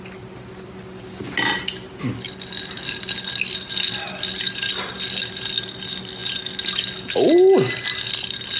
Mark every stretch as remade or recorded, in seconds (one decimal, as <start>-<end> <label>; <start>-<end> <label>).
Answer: 0.0-8.6 recorded